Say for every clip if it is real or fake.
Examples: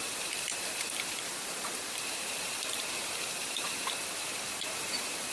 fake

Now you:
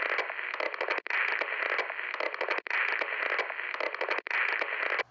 real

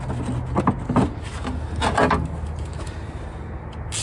real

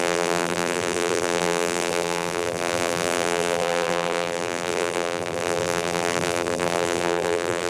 fake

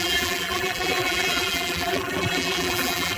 fake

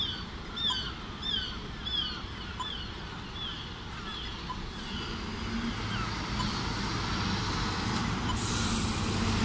real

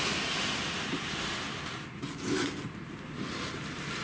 fake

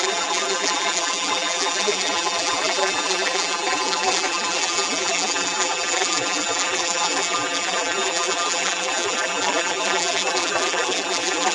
fake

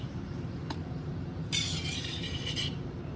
fake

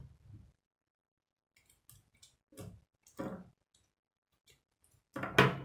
real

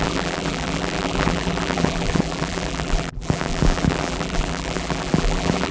fake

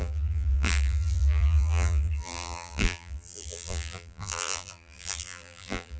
fake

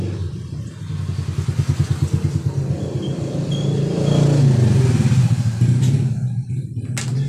real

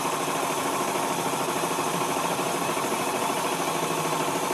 real